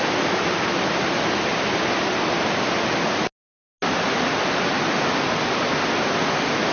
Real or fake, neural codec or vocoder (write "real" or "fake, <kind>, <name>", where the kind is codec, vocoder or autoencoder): real